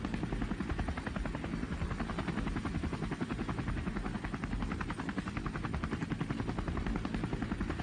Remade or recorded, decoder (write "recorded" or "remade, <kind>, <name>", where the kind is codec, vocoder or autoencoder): recorded